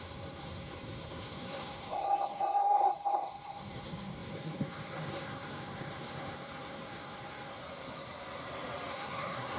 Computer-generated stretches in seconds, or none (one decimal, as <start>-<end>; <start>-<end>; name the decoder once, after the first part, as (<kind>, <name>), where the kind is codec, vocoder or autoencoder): 0.0-7.6 (codec, SNAC); 8.9-9.6